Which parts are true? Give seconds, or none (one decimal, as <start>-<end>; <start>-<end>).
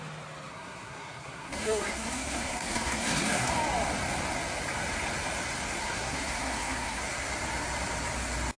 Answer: 0.0-0.5; 3.5-5.8; 7.0-8.6